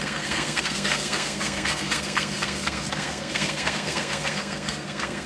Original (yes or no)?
no